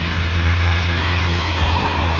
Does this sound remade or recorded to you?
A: remade